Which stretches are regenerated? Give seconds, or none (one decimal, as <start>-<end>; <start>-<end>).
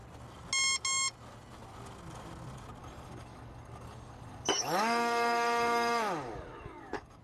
2.8-7.2